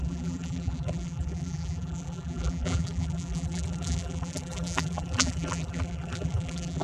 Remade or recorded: remade